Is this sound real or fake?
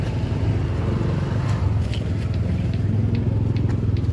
real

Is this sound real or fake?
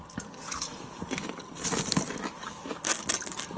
real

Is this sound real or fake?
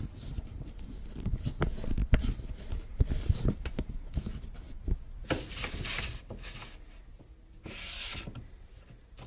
real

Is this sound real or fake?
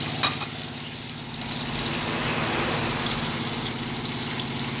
real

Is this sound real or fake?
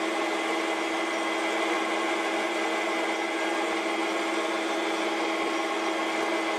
real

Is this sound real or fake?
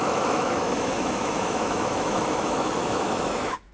fake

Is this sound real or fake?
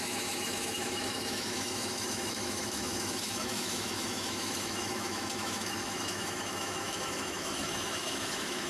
fake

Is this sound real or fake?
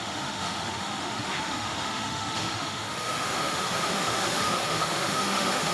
fake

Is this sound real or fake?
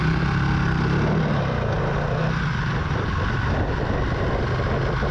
real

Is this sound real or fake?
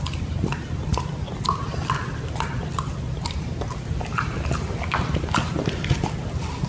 real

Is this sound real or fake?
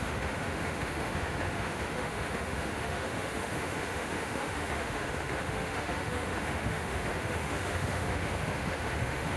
fake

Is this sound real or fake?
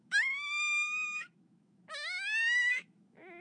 fake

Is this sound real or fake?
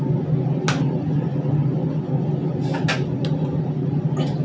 real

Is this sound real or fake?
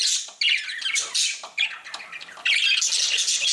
real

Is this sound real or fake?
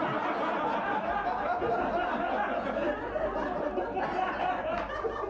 real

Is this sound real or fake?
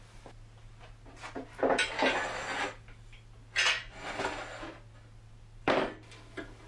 real